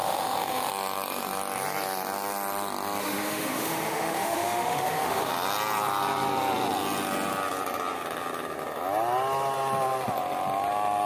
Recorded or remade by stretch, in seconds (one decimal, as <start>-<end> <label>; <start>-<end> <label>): 0.0-0.7 remade; 0.7-3.0 recorded; 3.0-5.3 remade; 5.3-11.1 recorded